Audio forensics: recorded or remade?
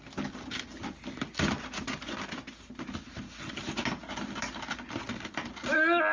recorded